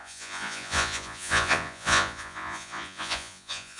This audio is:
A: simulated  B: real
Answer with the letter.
A